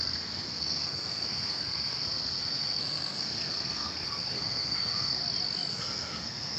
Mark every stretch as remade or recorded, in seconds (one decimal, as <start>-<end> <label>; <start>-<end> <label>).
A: 0.0-5.2 remade; 5.2-5.7 recorded; 5.7-6.6 remade

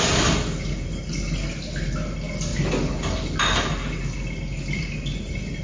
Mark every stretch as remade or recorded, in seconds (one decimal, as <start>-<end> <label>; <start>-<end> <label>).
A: 0.0-5.6 recorded

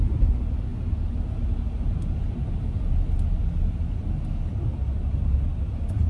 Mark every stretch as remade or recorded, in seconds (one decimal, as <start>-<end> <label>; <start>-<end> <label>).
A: 0.0-6.1 recorded